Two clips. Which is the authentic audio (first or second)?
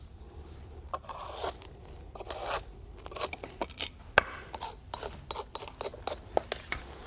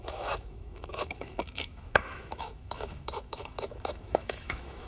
first